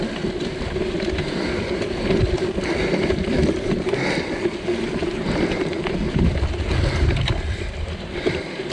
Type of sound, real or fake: fake